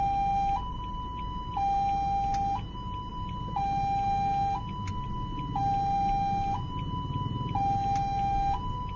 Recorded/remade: recorded